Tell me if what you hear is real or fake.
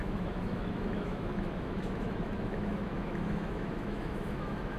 fake